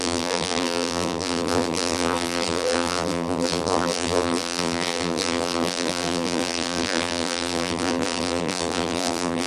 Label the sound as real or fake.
fake